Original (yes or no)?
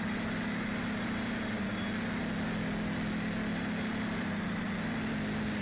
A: yes